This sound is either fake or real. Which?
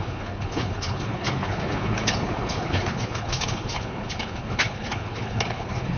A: fake